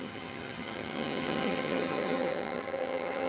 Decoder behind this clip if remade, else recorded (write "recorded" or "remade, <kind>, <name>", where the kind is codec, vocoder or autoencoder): remade, vocoder, HiFi-GAN